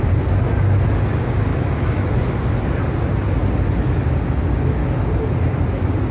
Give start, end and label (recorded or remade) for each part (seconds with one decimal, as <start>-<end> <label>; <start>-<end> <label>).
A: 0.0-1.5 recorded; 1.5-2.2 remade; 2.2-6.1 recorded